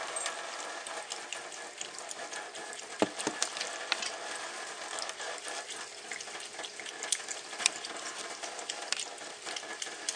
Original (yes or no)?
no